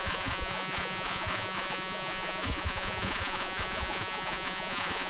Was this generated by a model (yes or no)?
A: yes